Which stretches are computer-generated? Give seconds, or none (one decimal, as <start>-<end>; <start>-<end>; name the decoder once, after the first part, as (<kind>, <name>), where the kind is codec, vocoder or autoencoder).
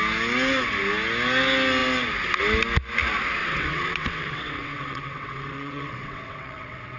3.4-7.0 (vocoder, WaveNeXt)